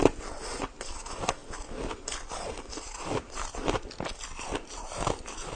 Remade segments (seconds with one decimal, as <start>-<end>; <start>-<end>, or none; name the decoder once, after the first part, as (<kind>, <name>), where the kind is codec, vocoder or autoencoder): none

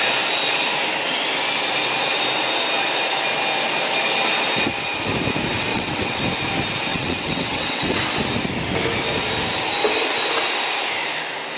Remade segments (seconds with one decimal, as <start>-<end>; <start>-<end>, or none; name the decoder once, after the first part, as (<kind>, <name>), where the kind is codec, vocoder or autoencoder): 5.7-6.2 (vocoder, WaveNeXt); 6.9-8.0

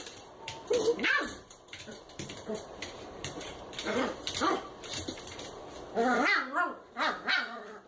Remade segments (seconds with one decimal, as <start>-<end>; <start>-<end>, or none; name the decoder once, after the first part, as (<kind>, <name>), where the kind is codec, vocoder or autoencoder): 0.0-5.6 (vocoder, BigVGAN v2); 7.3-7.9

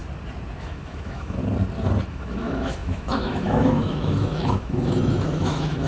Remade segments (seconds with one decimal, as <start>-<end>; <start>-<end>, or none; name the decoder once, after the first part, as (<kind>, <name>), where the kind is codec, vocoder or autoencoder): 0.6-1.4 (autoencoder, DAC-VAE); 2.1-5.9